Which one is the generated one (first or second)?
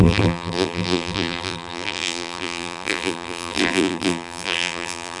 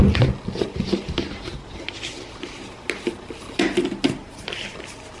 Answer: first